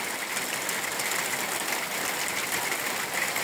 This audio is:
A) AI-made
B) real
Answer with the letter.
B